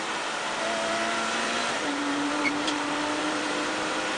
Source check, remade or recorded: remade